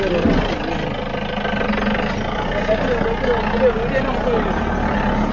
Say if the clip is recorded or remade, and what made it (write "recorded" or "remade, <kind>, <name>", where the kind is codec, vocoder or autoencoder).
recorded